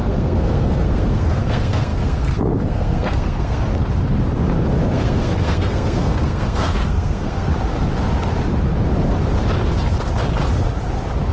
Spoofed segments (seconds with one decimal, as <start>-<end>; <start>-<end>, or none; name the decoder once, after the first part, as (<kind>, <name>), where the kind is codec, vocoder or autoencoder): 0.0-3.7 (codec, SNAC); 4.9-7.5